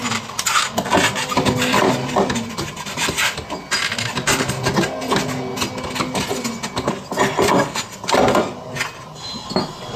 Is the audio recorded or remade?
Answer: recorded